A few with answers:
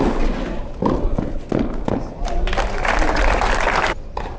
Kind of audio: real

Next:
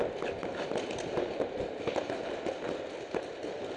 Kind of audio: real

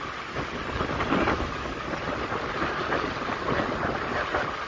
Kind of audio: real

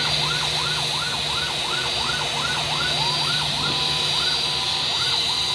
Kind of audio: real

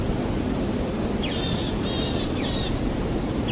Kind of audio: real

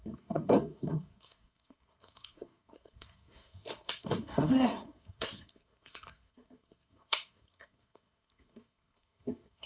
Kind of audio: fake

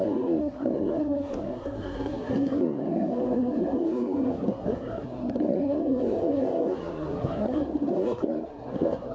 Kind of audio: fake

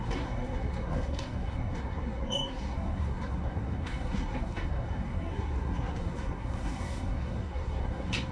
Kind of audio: fake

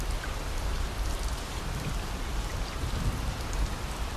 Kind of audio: real